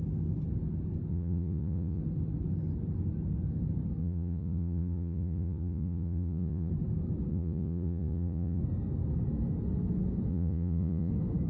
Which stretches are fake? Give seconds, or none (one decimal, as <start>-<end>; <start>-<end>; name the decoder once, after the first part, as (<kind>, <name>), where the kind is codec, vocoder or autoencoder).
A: 1.1-2.0 (vocoder, Vocos); 4.0-6.7; 7.3-8.6; 10.3-11.1